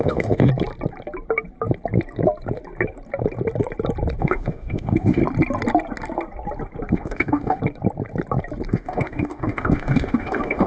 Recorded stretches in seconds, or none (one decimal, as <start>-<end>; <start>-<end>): 0.5-4.2; 5.2-6.9; 7.6-8.7